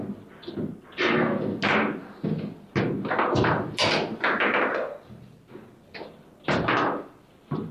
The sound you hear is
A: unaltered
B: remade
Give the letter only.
A